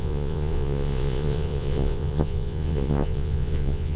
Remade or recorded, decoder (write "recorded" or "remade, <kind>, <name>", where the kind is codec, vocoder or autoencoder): remade, vocoder, Vocos